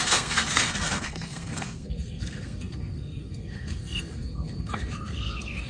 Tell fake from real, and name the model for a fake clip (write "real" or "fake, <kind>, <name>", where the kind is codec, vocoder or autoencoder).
fake, codec, SNAC